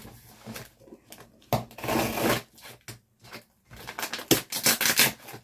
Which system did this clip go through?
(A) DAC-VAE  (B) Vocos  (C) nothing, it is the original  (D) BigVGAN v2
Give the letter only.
C